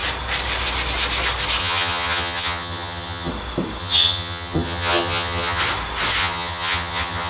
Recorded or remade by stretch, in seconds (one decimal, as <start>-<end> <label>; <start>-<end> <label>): 0.0-1.6 recorded; 1.6-3.3 remade; 3.3-3.8 recorded; 3.8-5.6 remade; 5.6-6.2 recorded; 6.2-7.3 remade